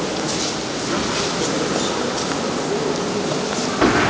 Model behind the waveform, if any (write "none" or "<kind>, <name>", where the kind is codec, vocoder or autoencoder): none